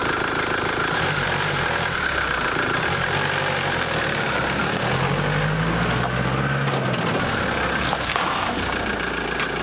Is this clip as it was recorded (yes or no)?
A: yes